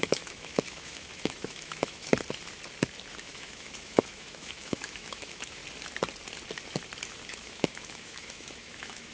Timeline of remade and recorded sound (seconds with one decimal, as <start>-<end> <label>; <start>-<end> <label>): 0.0-2.1 remade; 2.1-3.1 recorded; 3.1-5.6 remade; 5.6-7.3 recorded; 7.3-9.1 remade